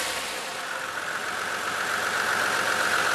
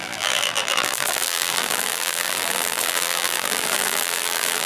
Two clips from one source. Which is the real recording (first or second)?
first